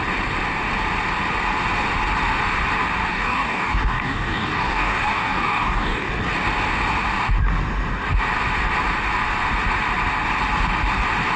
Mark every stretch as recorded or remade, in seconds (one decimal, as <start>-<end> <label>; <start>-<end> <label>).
0.0-3.1 recorded; 3.1-6.1 remade; 6.1-11.4 recorded